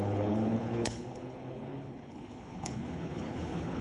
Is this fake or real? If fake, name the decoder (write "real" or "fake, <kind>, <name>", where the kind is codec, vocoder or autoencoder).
fake, codec, HILCodec